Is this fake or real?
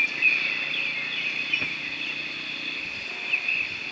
real